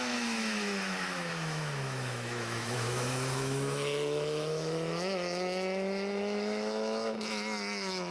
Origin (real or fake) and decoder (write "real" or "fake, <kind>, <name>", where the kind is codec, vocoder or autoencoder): fake, autoencoder, DAC-VAE